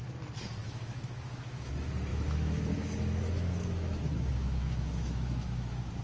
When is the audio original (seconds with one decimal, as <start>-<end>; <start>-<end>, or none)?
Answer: 0.0-0.6; 1.7-2.1